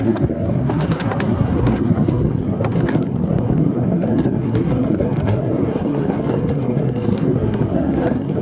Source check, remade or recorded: remade